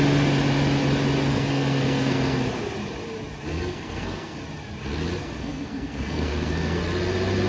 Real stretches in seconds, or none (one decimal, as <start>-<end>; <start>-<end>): 0.0-1.3; 2.4-3.5; 4.4-5.2; 6.8-7.5